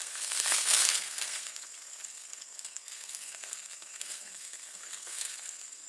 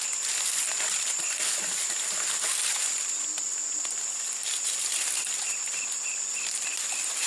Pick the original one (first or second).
second